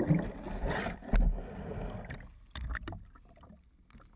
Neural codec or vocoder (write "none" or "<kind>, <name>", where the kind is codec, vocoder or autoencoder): none